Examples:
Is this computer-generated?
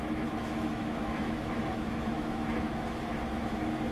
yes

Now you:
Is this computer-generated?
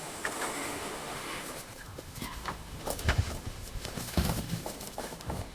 yes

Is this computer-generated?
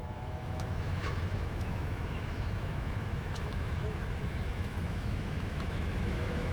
yes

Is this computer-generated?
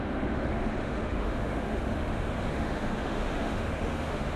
yes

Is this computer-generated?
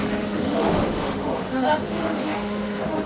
yes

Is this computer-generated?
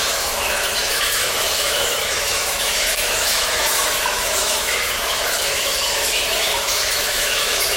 yes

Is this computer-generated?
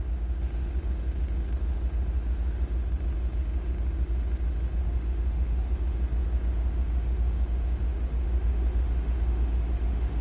yes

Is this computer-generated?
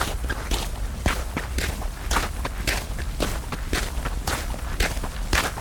no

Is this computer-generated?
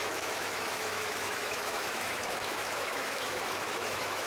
yes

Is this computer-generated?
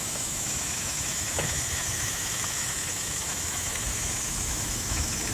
yes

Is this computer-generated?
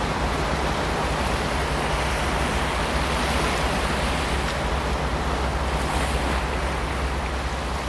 no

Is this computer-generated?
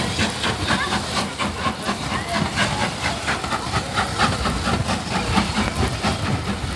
no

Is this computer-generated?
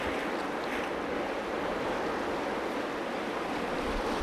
no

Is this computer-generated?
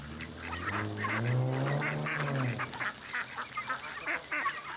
no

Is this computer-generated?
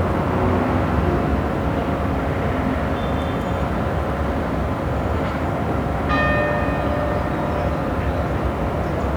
no